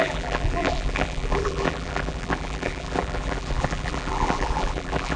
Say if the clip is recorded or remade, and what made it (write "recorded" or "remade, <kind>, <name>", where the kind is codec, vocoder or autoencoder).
remade, vocoder, BigVGAN v2